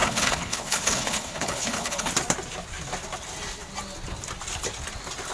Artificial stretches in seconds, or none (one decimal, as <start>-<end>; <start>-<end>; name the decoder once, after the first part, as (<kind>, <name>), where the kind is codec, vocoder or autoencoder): 0.0-2.1 (codec, HILCodec)